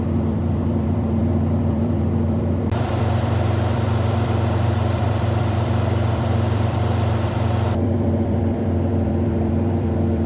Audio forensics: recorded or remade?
remade